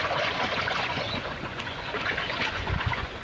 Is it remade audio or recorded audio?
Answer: remade